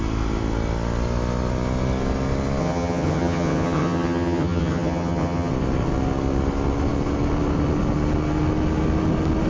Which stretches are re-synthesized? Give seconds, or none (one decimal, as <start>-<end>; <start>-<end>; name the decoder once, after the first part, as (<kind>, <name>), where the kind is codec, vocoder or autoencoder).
2.6-5.5 (vocoder, HiFi-GAN)